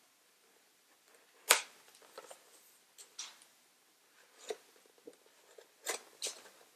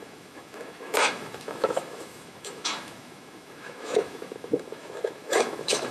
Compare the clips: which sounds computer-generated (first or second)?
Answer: second